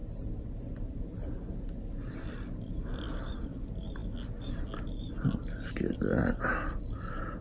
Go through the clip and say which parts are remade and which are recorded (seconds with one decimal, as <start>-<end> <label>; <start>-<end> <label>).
0.0-7.4 recorded